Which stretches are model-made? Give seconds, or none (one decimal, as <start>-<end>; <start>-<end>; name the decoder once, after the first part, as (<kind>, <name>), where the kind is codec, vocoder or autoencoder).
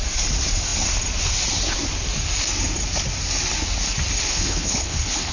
4.3-5.3 (codec, HILCodec)